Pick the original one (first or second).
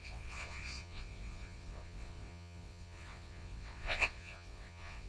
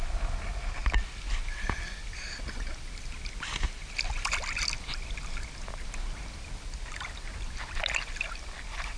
second